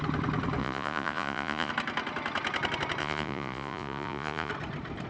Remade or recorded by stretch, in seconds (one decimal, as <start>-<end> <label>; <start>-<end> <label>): 0.0-0.6 recorded; 0.6-1.7 remade; 1.7-3.0 recorded; 3.0-4.5 remade; 4.5-5.1 recorded